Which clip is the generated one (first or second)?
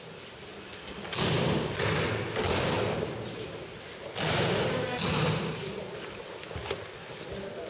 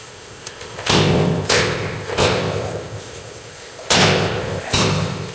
second